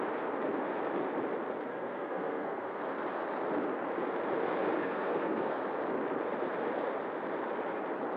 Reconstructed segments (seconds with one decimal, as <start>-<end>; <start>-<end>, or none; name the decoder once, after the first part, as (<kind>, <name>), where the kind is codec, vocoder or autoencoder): 1.7-2.8 (codec, SNAC); 4.8-5.6